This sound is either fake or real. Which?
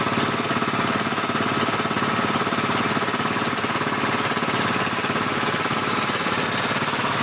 real